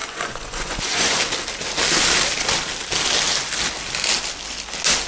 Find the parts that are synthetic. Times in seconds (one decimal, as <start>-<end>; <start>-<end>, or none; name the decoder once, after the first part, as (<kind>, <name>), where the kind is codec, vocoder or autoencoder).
0.0-1.2 (vocoder, Vocos)